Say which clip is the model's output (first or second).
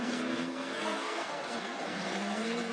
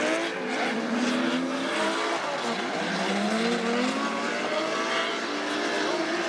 first